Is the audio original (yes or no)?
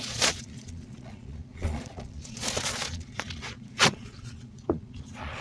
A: no